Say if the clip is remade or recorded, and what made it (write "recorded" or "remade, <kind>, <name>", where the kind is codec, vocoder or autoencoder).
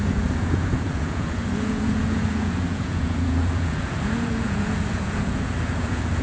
remade, vocoder, Vocos